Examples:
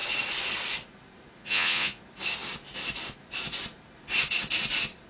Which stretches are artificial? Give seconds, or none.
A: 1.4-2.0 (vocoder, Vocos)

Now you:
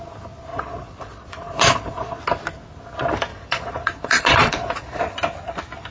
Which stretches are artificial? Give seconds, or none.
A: 0.5-2.2 (vocoder, Vocos); 3.3-5.0